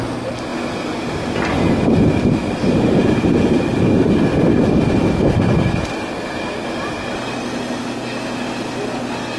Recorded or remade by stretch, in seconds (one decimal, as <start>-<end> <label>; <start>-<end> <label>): 0.0-9.4 recorded